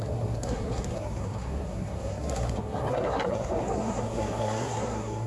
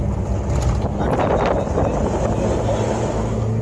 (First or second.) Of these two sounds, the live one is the second